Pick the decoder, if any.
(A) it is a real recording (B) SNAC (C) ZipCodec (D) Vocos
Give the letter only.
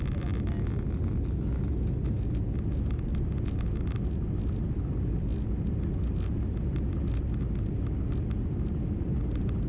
A